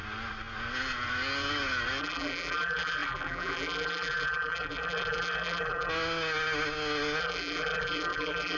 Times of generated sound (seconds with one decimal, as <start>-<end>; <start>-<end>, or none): 2.0-5.9; 7.2-8.6